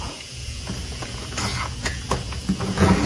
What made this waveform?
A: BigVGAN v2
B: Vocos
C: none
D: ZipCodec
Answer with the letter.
B